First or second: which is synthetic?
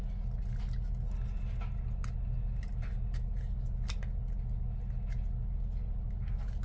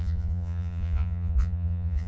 second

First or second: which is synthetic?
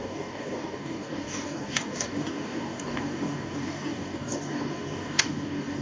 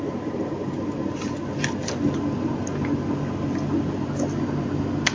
first